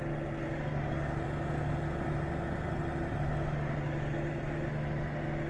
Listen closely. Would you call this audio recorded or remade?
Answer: recorded